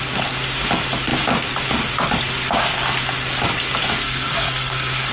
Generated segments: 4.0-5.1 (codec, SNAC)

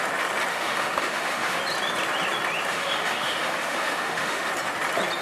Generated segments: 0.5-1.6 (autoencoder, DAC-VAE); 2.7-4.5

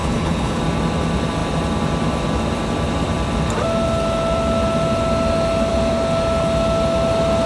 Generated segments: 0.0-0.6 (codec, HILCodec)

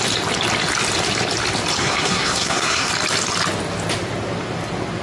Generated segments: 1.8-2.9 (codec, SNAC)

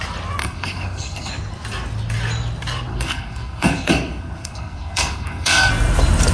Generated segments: 0.4-1.3 (codec, SNAC); 2.9-5.7